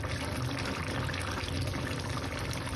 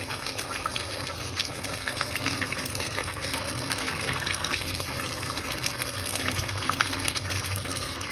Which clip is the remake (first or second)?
second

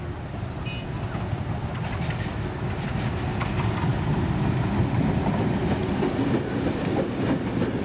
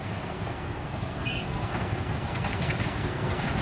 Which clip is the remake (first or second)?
second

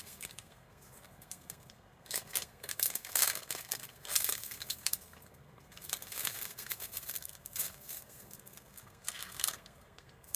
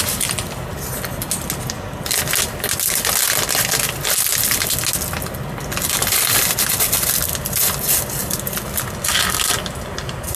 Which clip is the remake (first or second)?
first